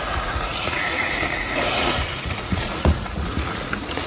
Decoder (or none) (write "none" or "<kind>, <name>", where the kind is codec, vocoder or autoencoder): vocoder, Vocos